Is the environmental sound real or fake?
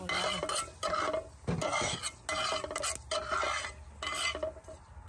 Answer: real